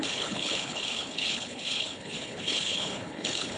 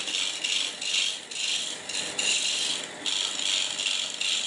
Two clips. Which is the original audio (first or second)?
second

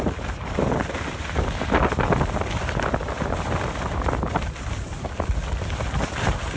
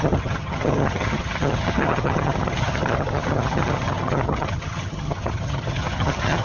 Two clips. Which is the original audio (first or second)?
first